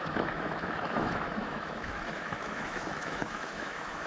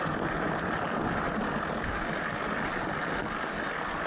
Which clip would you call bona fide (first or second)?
second